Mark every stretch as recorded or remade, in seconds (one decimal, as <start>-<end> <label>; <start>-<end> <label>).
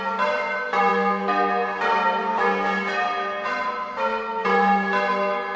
0.0-5.6 recorded